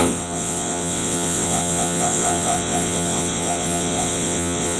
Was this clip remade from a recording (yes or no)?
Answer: yes